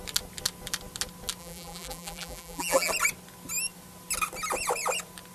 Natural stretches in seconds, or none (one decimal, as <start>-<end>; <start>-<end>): 0.0-1.4; 2.9-5.3